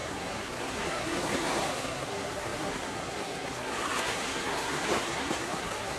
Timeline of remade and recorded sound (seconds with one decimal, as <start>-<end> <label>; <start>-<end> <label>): 0.0-6.0 remade

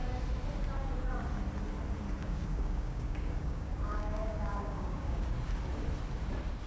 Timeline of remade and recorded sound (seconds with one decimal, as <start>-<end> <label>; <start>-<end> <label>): 0.0-2.2 recorded; 2.2-5.3 remade; 5.3-6.7 recorded

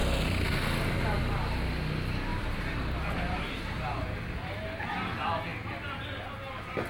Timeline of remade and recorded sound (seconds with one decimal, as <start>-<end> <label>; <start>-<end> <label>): 0.0-2.3 recorded; 2.3-4.2 remade; 4.2-6.9 recorded

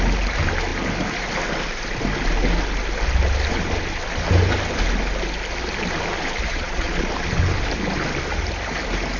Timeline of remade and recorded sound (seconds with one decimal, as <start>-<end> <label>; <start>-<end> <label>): 0.0-6.5 recorded; 6.5-7.1 remade; 7.1-9.2 recorded